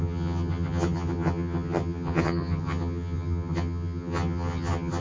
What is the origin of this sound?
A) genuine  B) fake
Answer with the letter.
B